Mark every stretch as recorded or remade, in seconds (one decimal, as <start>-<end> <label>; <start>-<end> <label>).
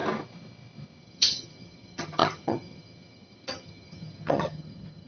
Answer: 0.0-1.0 recorded; 1.0-5.1 remade